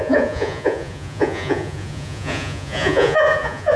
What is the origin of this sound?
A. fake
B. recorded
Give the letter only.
A